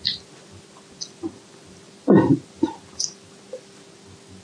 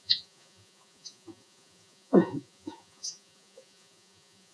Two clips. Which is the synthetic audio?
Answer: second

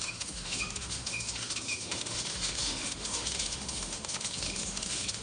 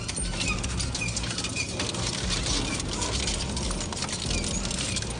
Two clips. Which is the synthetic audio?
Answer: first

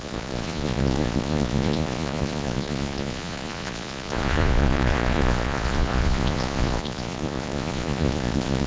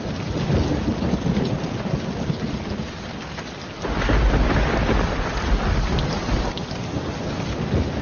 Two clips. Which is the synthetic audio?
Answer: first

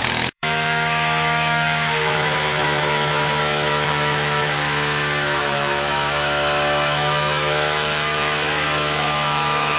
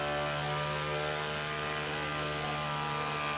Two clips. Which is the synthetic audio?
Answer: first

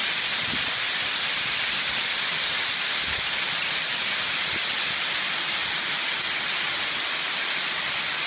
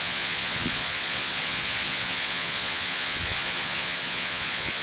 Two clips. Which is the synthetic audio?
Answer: second